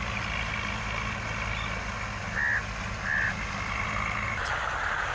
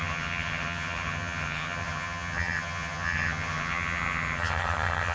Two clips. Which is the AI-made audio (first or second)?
second